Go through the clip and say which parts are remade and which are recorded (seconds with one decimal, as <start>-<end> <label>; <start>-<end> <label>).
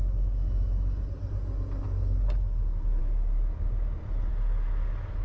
0.0-5.2 recorded